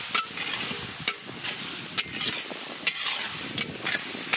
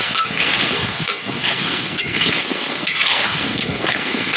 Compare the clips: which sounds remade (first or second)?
second